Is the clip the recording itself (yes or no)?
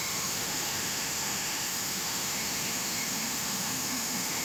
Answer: no